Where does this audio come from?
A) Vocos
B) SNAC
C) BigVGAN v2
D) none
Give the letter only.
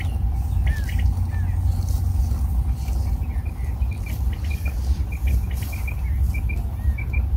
D